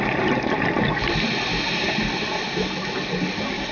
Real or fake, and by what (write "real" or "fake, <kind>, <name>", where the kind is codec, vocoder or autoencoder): real